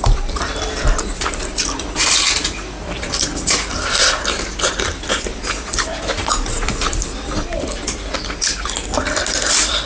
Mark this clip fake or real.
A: fake